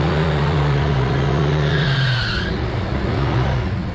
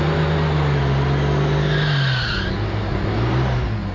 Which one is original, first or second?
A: second